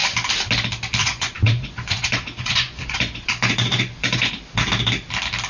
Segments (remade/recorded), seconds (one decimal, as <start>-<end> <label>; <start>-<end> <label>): 0.0-1.0 recorded; 1.0-4.3 remade; 4.3-5.5 recorded